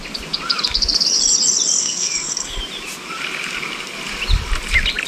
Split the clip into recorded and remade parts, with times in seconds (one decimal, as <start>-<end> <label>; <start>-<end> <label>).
0.0-1.8 recorded; 1.8-2.6 remade; 2.6-5.1 recorded